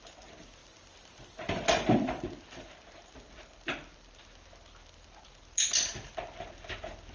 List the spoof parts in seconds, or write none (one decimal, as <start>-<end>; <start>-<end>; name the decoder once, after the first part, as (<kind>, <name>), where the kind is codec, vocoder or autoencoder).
none